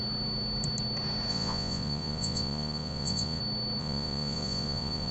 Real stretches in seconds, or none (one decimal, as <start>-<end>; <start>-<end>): 0.0-1.3; 3.4-3.8